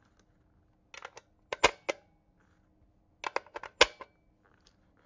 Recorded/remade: recorded